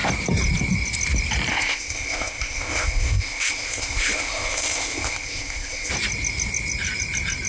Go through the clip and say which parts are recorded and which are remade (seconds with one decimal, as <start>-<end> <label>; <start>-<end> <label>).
0.0-1.5 recorded; 1.5-5.9 remade; 5.9-7.5 recorded